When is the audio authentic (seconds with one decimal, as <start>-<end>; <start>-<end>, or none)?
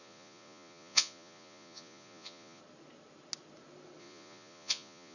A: 2.6-4.0